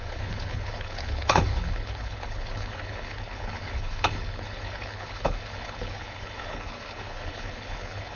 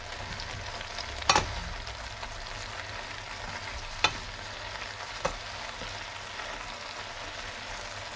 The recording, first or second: second